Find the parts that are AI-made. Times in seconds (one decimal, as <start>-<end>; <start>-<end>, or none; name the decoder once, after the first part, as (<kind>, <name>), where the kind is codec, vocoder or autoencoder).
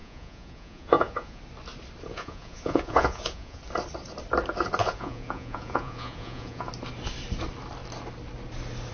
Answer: 0.0-1.4 (vocoder, Vocos); 2.1-3.6; 4.8-6.7